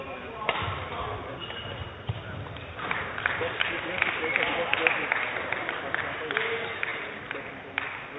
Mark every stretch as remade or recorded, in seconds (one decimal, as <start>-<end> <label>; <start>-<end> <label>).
0.0-1.8 recorded; 1.8-6.3 remade; 6.3-6.9 recorded; 6.9-7.4 remade; 7.4-8.2 recorded

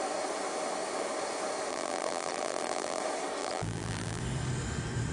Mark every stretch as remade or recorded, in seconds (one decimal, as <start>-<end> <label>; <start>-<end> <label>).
0.0-1.7 recorded; 1.7-3.0 remade; 3.0-3.4 recorded; 3.4-4.2 remade; 4.2-5.1 recorded

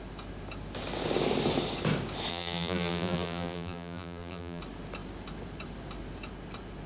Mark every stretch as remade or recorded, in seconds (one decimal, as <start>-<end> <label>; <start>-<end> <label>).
0.0-2.3 recorded; 2.3-4.6 remade; 4.6-6.9 recorded

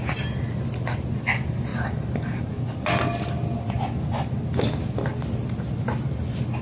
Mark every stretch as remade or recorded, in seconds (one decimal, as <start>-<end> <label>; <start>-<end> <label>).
0.0-1.7 remade; 1.7-5.7 recorded; 5.7-6.6 remade

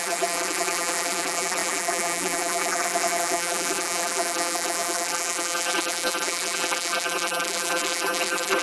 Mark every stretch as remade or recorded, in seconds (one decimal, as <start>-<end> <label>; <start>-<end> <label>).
0.0-8.6 remade

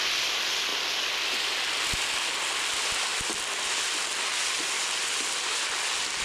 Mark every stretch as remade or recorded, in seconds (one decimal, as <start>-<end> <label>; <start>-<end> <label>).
0.0-6.2 recorded

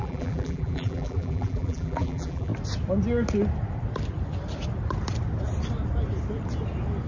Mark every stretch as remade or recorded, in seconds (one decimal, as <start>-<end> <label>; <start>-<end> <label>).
0.0-2.5 remade; 2.5-7.1 recorded